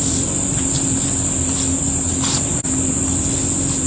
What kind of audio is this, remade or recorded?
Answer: recorded